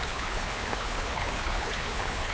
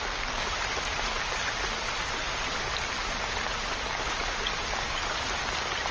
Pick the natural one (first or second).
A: second